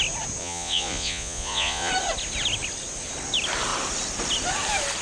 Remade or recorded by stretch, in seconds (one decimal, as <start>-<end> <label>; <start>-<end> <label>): 0.0-0.4 recorded; 0.4-1.9 remade; 1.9-5.0 recorded